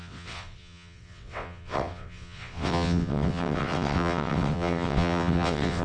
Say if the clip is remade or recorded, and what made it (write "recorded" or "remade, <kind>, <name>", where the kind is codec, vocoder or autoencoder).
remade, vocoder, WaveNeXt